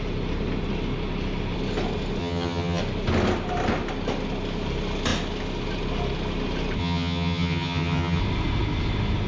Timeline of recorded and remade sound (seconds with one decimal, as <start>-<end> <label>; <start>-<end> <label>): 0.0-2.2 recorded; 2.2-2.8 remade; 2.8-6.8 recorded; 6.8-8.2 remade; 8.2-9.3 recorded